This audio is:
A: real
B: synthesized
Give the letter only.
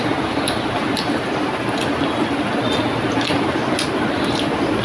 A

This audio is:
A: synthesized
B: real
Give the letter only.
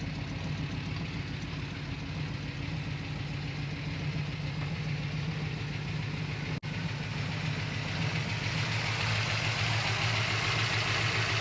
B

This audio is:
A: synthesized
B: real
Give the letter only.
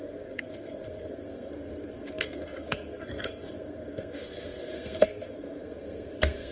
A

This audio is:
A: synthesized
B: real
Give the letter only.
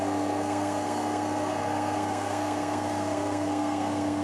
A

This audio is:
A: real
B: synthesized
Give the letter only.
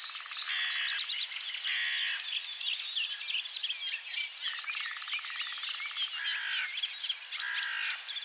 A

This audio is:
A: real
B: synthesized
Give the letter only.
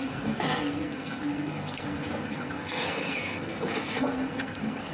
B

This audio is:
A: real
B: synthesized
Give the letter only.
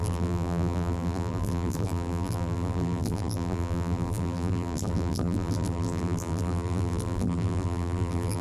B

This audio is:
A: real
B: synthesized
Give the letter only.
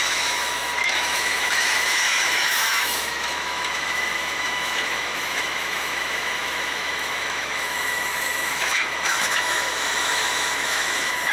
B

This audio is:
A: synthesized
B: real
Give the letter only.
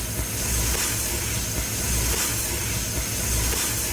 B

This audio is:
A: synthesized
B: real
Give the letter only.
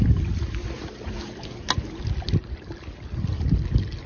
B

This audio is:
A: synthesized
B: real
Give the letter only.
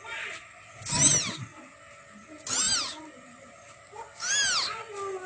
B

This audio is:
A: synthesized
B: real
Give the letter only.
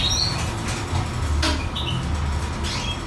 B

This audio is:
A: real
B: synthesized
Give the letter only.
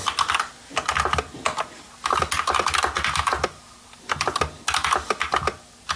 A